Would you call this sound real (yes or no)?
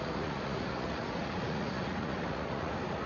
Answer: no